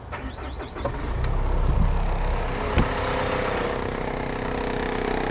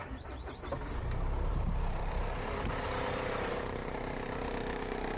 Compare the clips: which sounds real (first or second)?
first